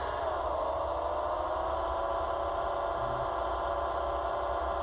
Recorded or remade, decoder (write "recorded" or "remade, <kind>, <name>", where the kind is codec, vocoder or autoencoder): recorded